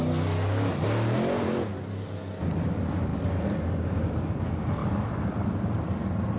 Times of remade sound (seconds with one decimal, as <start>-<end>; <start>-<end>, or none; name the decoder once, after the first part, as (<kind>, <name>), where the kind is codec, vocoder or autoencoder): none